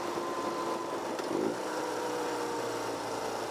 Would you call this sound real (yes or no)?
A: yes